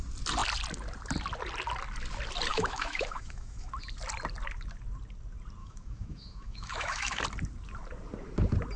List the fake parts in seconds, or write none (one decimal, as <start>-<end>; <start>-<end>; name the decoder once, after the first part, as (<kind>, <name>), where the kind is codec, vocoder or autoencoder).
2.5-3.7 (autoencoder, DAC-VAE); 5.6-7.2